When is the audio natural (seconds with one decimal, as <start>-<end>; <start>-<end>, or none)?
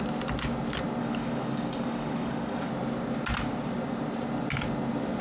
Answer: 0.0-1.0; 2.7-5.2